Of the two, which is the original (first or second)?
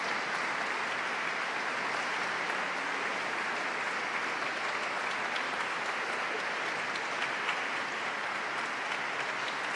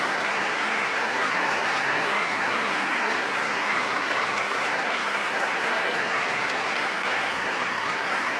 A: first